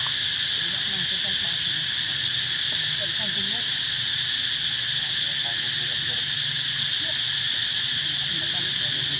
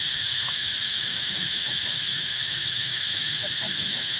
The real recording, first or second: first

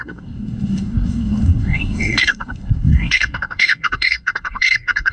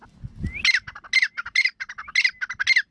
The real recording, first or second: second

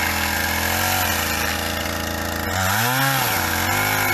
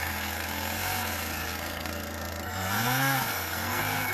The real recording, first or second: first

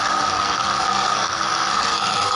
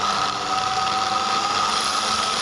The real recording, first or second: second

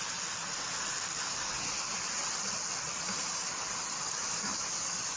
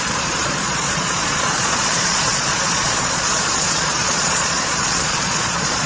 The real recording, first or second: first